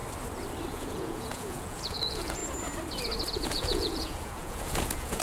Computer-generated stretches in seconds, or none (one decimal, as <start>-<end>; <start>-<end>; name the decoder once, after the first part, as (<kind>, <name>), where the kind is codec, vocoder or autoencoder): 0.7-2.4 (vocoder, Vocos); 3.3-5.2